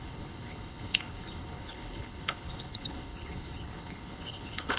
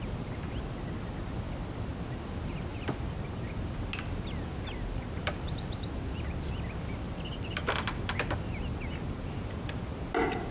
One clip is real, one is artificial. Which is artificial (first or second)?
first